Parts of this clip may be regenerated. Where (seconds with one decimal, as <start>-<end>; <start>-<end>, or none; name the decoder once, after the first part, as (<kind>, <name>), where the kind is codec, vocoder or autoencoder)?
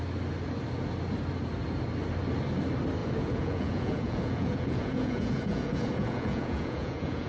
3.0-7.3 (vocoder, Vocos)